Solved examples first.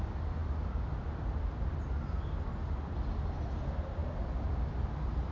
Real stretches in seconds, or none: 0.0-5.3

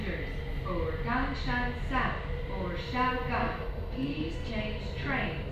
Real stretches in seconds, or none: 0.0-3.4; 4.5-5.5

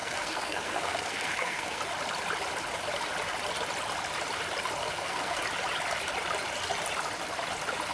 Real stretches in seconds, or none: 1.8-4.8; 5.4-7.9

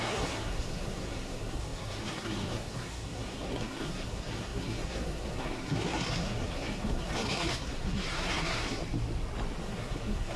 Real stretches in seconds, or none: 8.8-9.6